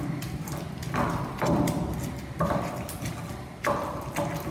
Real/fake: real